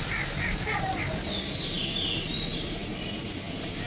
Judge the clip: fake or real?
real